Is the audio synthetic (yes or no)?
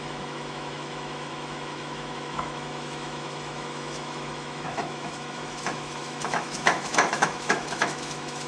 yes